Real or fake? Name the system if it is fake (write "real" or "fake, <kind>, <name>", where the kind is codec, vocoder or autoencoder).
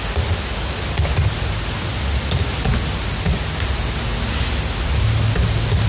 real